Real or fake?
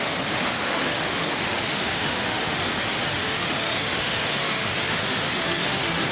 fake